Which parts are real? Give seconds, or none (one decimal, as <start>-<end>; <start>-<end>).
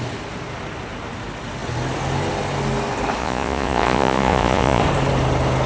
0.0-3.2; 4.8-5.7